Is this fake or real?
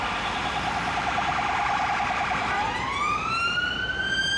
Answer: fake